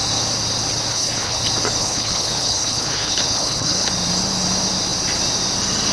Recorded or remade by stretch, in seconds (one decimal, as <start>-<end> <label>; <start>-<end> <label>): 0.0-0.9 recorded; 0.9-1.4 remade; 1.4-1.8 recorded; 1.8-3.9 remade; 3.9-5.9 recorded